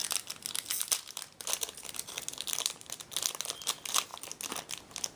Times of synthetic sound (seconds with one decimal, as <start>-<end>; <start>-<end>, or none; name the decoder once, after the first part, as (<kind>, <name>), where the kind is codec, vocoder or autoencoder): none